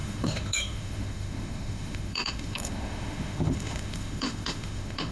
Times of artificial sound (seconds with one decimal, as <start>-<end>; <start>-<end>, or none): 0.0-5.1

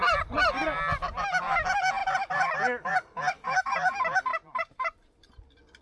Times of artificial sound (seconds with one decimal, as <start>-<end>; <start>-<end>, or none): 2.0-2.5; 4.3-5.3

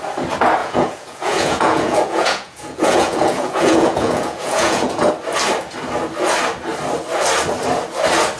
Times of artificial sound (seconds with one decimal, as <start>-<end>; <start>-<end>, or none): 0.6-5.1

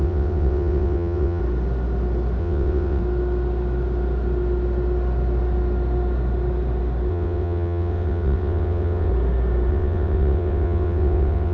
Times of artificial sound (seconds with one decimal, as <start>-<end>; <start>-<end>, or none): 0.0-1.4; 2.4-3.0; 7.1-9.1; 9.7-11.5

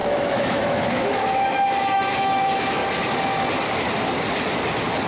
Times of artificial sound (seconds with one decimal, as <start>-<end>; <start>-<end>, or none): 0.0-2.8

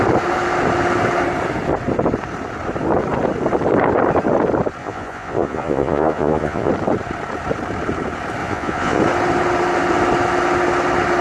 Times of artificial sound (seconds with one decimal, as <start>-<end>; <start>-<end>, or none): 4.8-6.7; 8.4-9.0